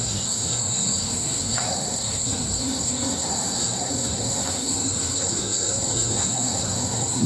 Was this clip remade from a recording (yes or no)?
yes